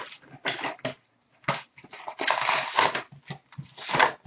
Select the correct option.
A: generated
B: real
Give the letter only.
B